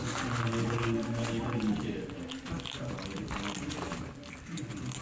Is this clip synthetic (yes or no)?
no